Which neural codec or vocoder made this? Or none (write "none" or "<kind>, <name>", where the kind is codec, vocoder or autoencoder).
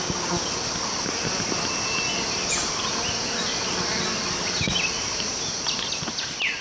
none